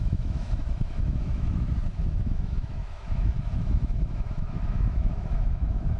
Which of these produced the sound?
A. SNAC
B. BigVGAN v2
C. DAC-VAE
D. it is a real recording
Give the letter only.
C